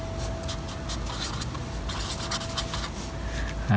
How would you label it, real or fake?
real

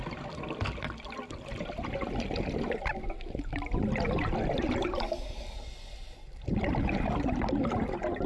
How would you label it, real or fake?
real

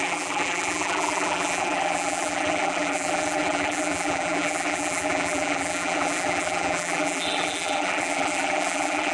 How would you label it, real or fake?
fake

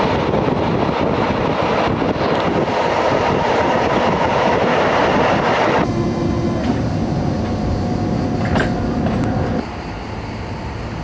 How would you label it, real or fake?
real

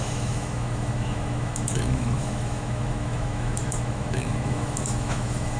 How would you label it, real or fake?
fake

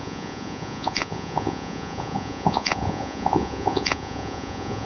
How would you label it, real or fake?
fake